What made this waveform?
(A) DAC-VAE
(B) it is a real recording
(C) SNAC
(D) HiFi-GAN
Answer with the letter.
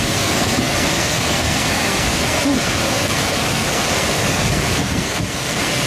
C